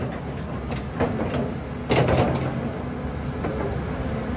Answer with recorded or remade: recorded